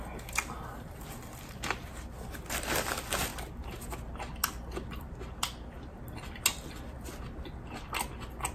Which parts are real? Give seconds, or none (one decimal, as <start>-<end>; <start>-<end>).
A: 0.0-8.5